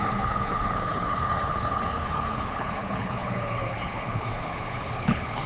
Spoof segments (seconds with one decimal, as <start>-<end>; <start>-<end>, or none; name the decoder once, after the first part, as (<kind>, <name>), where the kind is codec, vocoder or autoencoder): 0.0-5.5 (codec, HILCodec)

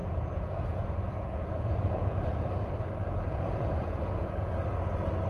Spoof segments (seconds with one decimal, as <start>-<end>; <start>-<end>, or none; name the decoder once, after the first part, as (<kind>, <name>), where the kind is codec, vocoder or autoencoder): 0.0-2.5 (vocoder, Vocos); 3.0-4.6

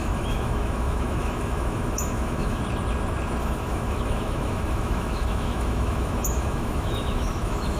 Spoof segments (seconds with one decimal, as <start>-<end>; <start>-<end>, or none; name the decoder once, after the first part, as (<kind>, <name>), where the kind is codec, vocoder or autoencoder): 0.0-2.6 (autoencoder, DAC-VAE); 3.4-7.8